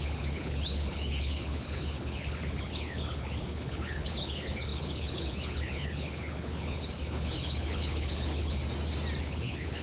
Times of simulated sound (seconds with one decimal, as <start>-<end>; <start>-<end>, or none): 0.0-8.6; 9.2-9.8